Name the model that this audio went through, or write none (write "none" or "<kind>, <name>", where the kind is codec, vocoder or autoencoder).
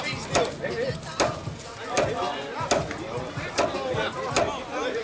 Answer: none